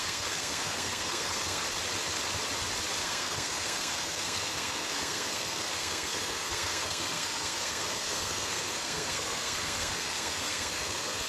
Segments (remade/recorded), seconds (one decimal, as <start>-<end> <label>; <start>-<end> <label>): 0.0-1.6 remade; 1.6-3.0 recorded; 3.0-11.3 remade

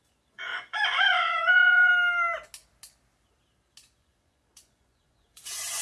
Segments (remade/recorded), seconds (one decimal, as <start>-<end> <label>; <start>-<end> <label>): 0.0-1.9 remade; 1.9-4.0 recorded; 4.0-5.8 remade

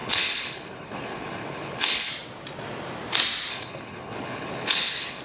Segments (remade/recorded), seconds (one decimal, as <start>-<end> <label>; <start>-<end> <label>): 0.0-2.1 remade; 2.1-3.5 recorded; 3.5-5.2 remade

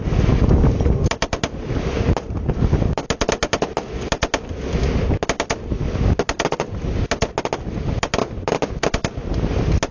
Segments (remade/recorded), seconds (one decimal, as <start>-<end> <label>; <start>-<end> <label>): 0.0-9.9 recorded

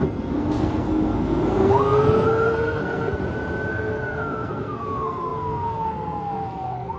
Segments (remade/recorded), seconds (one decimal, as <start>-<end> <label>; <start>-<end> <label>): 0.0-3.2 remade; 3.2-3.7 recorded; 3.7-7.0 remade

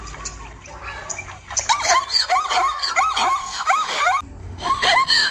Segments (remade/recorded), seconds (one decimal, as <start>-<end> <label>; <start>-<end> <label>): 0.0-3.4 recorded; 3.4-4.0 remade; 4.0-4.4 recorded; 4.4-5.3 remade

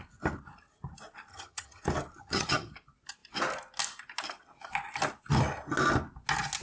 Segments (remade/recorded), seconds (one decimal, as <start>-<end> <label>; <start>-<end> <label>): 0.0-1.3 recorded; 1.3-1.8 remade; 1.8-2.2 recorded; 2.2-2.7 remade; 2.7-6.6 recorded

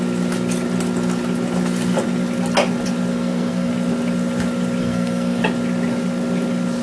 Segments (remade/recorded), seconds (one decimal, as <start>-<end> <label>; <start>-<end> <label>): 0.0-3.1 recorded; 3.1-3.7 remade; 3.7-4.8 recorded; 4.8-5.4 remade; 5.4-6.8 recorded